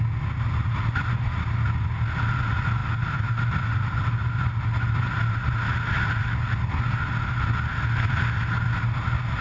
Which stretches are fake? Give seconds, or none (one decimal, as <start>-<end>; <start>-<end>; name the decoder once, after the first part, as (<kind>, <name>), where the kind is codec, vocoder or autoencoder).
none